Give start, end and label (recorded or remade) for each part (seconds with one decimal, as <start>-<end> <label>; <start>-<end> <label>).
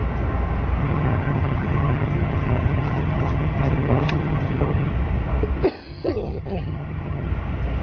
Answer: 0.0-0.8 recorded; 0.8-4.9 remade; 4.9-5.9 recorded; 5.9-7.3 remade; 7.3-7.8 recorded